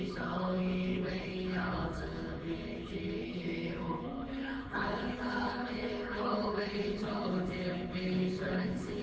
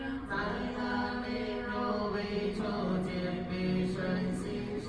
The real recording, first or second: second